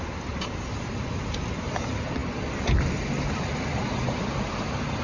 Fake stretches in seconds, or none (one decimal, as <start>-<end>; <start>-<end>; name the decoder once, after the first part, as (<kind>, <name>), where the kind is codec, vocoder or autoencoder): none